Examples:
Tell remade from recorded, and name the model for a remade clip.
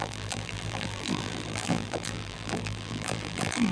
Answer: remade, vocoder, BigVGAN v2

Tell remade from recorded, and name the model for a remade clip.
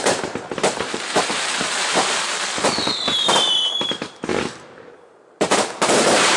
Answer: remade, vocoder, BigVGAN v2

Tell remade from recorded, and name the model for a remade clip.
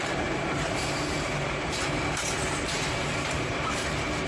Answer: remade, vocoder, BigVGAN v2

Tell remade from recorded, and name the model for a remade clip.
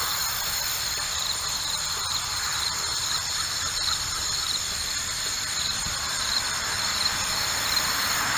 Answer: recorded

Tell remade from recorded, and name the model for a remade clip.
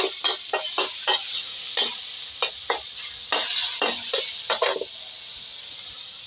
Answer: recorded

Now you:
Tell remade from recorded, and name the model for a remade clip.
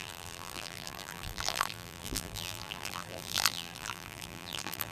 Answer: remade, vocoder, BigVGAN v2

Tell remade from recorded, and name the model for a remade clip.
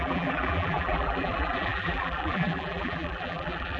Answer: remade, vocoder, BigVGAN v2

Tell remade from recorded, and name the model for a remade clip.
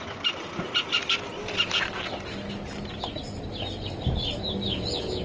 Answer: recorded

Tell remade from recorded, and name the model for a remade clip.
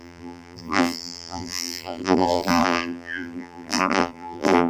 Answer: remade, vocoder, BigVGAN v2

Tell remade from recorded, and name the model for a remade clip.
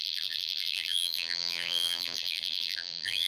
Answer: remade, vocoder, BigVGAN v2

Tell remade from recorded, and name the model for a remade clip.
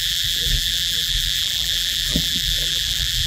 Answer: remade, vocoder, BigVGAN v2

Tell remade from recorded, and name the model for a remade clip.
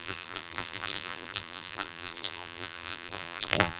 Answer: remade, vocoder, BigVGAN v2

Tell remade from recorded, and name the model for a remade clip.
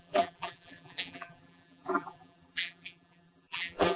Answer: remade, vocoder, BigVGAN v2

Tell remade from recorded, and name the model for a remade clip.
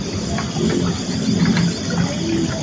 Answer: recorded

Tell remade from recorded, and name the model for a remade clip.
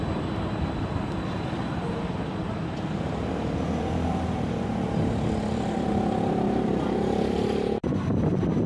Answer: remade, vocoder, BigVGAN v2